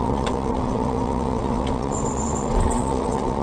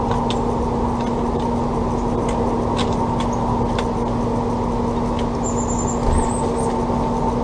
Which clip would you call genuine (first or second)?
second